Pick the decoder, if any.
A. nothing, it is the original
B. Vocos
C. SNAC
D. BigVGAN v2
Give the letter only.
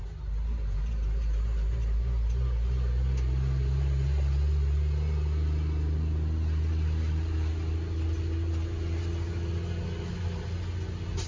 A